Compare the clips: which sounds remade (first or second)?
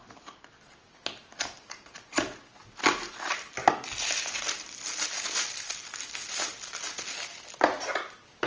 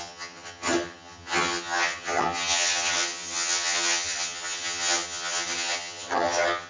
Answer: second